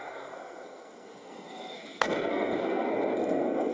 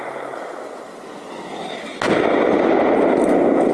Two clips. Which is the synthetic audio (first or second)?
first